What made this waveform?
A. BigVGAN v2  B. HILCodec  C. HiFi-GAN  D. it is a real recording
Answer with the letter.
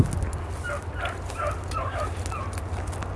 D